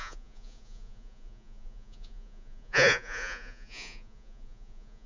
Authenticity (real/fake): fake